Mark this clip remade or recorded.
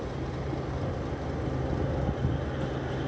recorded